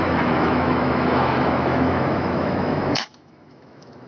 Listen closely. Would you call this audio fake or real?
fake